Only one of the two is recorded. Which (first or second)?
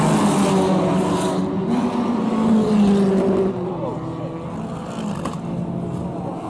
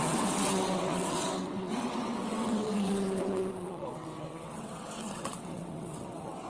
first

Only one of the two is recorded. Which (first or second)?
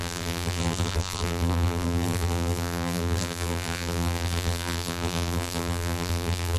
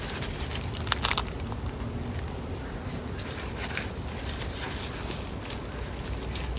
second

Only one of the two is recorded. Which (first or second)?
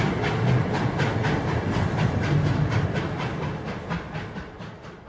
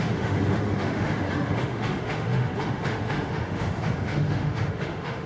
first